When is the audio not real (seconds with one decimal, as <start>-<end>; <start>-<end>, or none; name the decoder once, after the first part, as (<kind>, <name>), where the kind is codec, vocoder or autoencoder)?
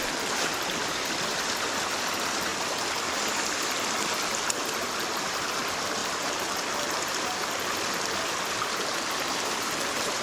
none